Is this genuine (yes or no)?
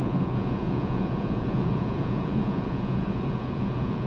no